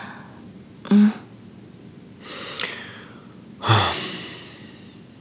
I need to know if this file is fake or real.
real